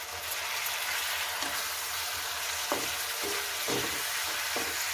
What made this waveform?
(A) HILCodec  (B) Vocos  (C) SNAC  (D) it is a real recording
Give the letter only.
D